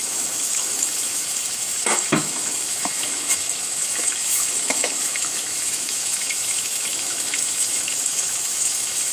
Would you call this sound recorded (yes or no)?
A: no